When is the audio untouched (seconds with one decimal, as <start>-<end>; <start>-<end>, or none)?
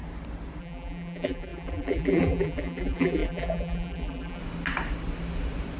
0.0-0.6; 4.4-5.8